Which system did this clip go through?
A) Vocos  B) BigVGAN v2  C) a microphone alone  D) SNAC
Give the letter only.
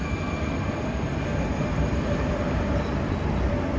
B